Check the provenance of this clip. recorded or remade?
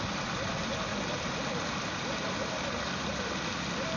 recorded